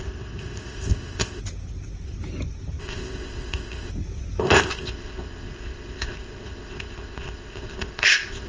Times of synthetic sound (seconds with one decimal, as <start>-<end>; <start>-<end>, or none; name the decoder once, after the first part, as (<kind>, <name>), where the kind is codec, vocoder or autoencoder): 0.0-1.4 (codec, ZipCodec); 2.8-3.9; 4.4-8.5